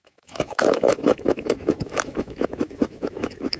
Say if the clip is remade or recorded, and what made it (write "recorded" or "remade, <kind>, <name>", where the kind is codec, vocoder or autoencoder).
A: remade, autoencoder, DAC-VAE